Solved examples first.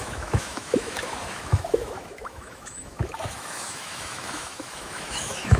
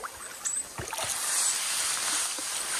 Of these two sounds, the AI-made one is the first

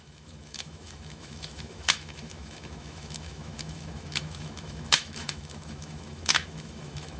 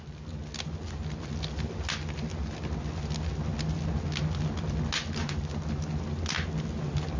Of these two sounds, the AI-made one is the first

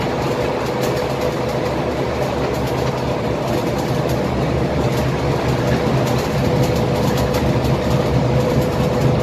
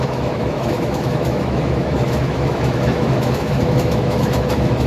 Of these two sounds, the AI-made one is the second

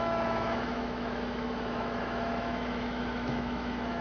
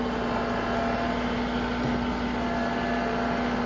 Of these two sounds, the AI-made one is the first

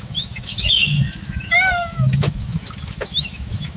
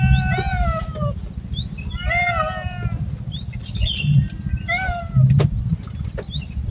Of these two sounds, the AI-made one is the first